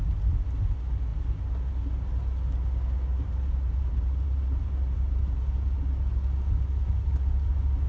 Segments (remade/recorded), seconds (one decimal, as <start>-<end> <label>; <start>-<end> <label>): 0.0-3.1 recorded; 3.1-5.4 remade; 5.4-7.9 recorded